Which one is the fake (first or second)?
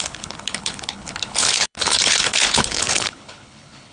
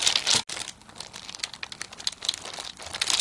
first